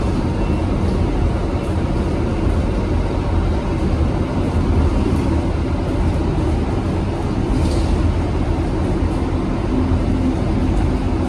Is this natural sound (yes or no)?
yes